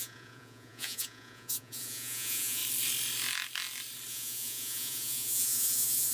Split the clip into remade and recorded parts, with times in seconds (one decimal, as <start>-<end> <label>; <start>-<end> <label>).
0.0-2.6 remade; 2.6-4.1 recorded; 4.1-6.1 remade